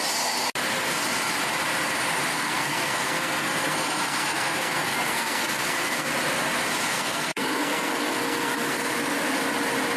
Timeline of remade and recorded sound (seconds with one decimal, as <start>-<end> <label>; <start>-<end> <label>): 0.0-2.3 recorded; 2.3-6.1 remade; 6.1-6.9 recorded; 6.9-8.9 remade; 8.9-10.0 recorded